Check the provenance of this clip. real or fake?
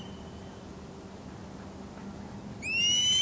real